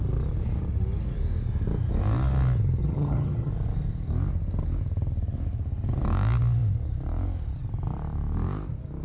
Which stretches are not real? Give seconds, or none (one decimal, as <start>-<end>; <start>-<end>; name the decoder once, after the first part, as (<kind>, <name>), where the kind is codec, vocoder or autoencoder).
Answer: 2.8-3.5 (vocoder, HiFi-GAN)